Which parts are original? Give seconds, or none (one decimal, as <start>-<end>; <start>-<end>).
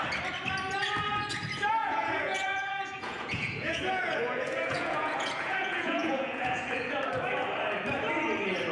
0.0-1.8; 7.0-8.7